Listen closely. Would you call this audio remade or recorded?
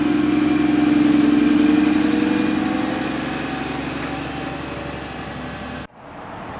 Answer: recorded